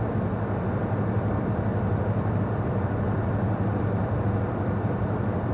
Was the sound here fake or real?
fake